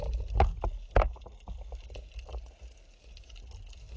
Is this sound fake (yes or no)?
no